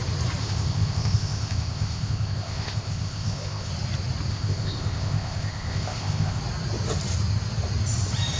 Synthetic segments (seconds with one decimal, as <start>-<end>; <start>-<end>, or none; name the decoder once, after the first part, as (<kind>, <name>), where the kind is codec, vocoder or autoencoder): 0.4-3.7 (codec, ZipCodec); 4.3-6.4